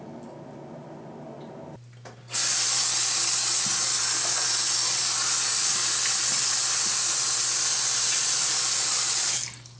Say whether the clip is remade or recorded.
recorded